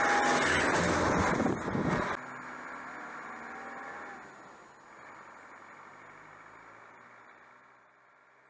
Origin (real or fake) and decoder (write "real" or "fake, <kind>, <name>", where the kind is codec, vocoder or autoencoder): real